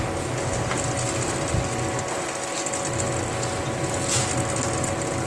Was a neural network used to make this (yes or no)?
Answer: no